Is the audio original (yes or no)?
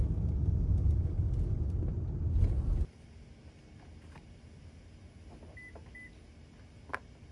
yes